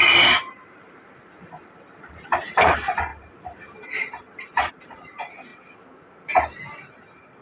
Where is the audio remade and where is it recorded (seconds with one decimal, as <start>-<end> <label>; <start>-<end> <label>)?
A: 0.0-5.5 remade; 5.5-7.4 recorded